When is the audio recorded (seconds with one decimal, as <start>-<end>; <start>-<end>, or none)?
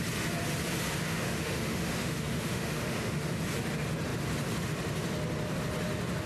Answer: 0.0-1.1; 3.4-6.3